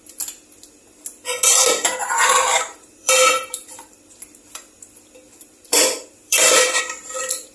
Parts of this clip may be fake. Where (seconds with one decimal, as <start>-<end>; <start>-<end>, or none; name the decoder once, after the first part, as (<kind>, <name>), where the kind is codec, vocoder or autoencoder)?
2.0-4.0 (vocoder, BigVGAN v2); 5.3-6.8